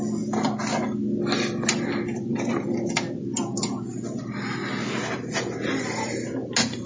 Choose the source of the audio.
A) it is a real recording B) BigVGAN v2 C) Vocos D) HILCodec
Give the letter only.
A